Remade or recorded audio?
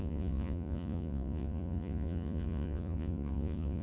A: remade